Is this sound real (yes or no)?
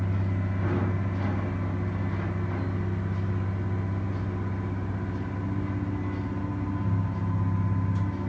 yes